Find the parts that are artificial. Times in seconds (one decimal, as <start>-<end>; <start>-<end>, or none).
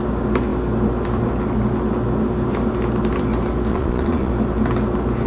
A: 3.7-4.3